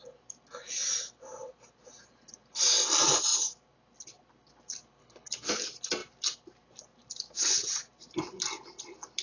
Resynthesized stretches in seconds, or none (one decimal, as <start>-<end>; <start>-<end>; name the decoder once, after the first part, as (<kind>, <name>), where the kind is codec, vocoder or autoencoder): 5.0-5.5 (codec, HILCodec)